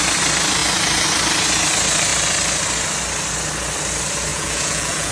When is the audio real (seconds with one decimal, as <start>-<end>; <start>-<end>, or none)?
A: 0.0-4.3

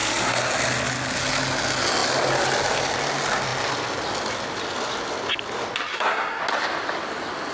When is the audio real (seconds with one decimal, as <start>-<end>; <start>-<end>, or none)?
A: 0.0-5.9; 6.4-7.5

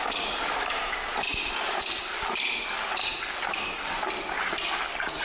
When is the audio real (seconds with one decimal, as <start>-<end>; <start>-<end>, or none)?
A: 0.0-5.2

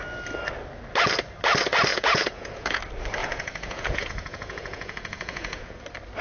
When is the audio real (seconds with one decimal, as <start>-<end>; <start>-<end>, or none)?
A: 0.0-1.9; 2.8-3.2; 5.8-6.2

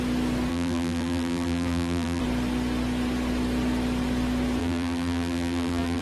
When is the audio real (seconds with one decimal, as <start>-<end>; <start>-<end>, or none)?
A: 0.0-0.5; 2.2-4.6